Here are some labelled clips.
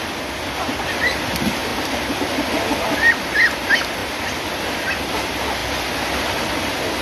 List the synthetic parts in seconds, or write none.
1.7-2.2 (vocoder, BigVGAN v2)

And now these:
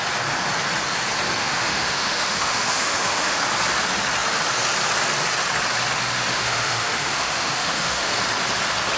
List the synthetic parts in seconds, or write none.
1.4-3.4 (autoencoder, DAC-VAE); 6.3-8.1

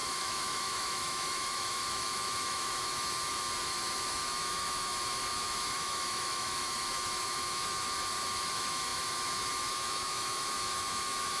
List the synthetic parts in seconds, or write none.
0.0-11.4 (autoencoder, DAC-VAE)

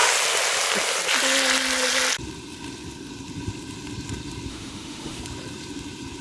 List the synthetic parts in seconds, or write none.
4.5-5.2 (autoencoder, DAC-VAE)

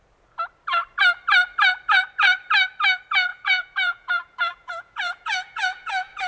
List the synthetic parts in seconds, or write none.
3.3-6.3 (vocoder, Vocos)

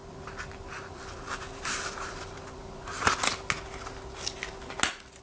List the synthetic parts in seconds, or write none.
0.0-3.1 (vocoder, BigVGAN v2)

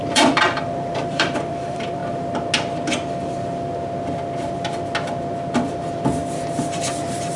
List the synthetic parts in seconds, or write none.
0.0-2.0 (vocoder, BigVGAN v2); 5.7-7.4